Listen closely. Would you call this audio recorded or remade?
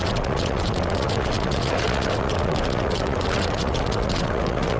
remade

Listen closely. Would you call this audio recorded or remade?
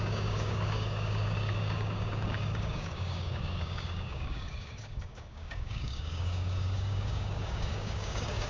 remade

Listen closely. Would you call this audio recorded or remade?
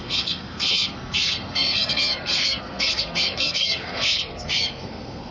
remade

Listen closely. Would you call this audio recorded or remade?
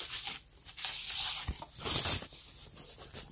recorded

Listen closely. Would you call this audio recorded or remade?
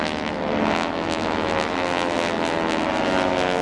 recorded